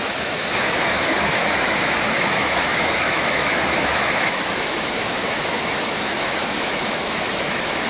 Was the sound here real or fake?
fake